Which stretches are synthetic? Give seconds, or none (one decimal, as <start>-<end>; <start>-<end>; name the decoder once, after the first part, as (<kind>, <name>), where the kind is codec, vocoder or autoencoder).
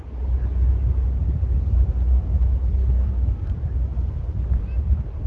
2.8-3.5 (codec, SNAC)